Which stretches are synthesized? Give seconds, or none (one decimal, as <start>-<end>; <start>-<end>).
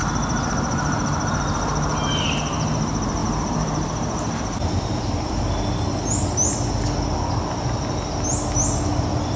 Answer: 3.2-5.4